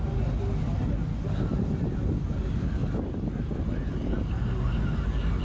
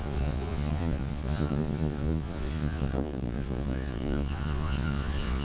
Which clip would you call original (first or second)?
first